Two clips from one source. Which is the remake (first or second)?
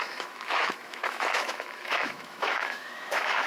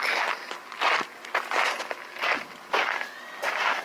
first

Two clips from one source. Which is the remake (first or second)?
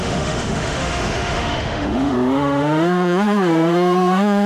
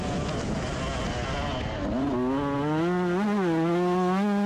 first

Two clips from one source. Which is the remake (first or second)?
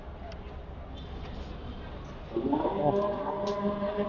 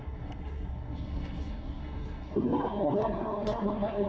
second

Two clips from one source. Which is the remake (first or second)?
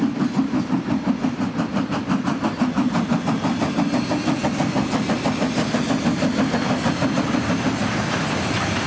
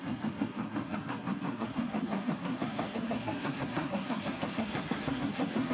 second